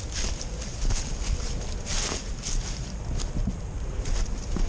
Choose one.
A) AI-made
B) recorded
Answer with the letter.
B